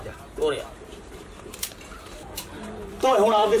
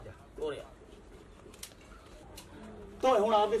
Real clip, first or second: second